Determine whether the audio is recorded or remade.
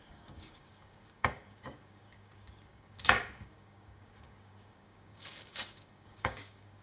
remade